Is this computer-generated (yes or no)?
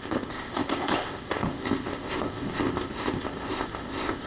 yes